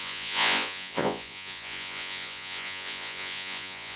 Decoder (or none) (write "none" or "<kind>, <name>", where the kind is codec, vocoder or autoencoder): vocoder, Vocos